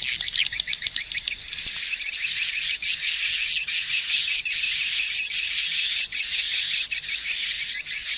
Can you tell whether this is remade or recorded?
recorded